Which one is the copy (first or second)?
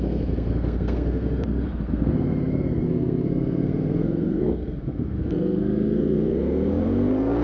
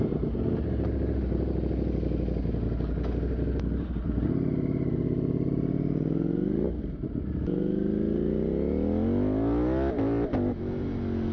first